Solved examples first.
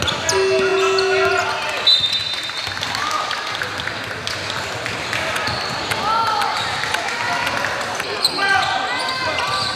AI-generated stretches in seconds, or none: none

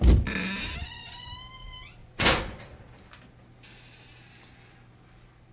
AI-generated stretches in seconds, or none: 0.8-1.3 (vocoder, Vocos); 2.0-2.6